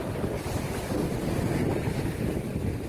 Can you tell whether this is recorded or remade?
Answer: recorded